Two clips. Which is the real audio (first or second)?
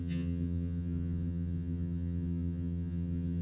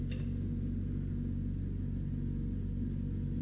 second